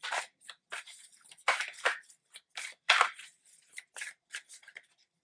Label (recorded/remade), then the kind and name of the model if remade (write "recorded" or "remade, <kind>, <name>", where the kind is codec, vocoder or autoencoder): remade, vocoder, BigVGAN v2